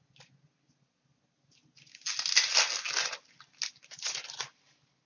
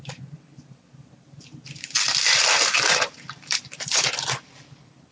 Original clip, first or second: first